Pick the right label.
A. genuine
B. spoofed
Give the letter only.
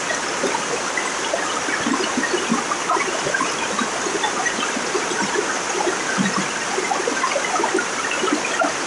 A